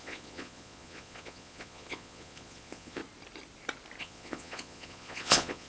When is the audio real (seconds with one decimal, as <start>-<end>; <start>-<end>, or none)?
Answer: 3.0-4.0